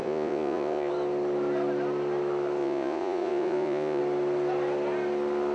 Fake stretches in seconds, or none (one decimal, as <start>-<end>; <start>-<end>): 0.0-0.9; 2.6-4.0